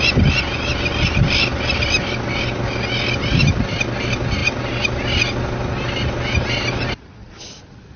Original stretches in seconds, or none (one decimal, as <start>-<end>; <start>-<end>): 0.0-8.0

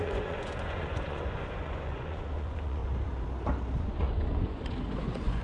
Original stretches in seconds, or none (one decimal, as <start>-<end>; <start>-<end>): 2.8-3.8

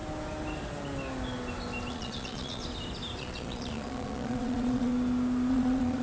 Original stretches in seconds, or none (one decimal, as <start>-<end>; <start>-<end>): 0.0-1.9; 2.6-3.2; 4.9-5.5